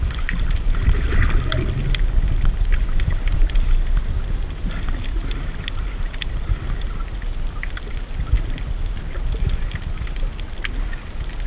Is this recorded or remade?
recorded